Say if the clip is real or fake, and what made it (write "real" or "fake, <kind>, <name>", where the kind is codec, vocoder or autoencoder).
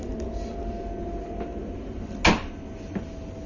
real